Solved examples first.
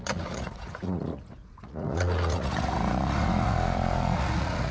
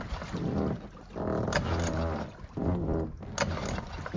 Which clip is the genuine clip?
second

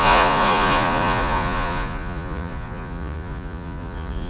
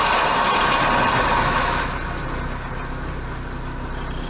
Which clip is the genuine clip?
second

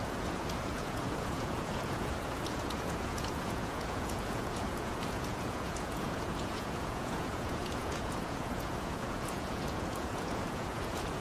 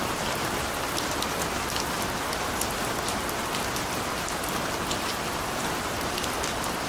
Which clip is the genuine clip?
second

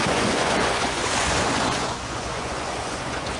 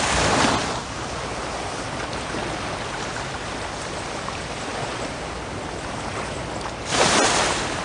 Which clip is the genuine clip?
second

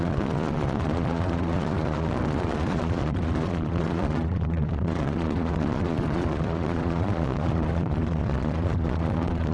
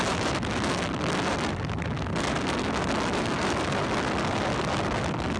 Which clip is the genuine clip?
second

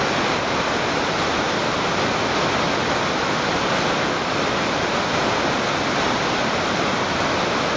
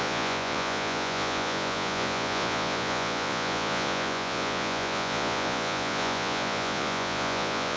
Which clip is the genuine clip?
first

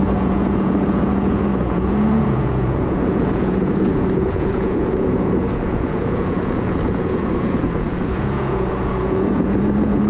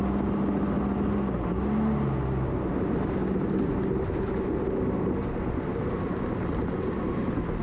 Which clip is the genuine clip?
second